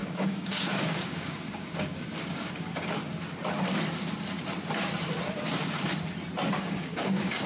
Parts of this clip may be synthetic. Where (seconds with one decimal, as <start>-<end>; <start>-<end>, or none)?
0.0-3.0; 6.6-7.5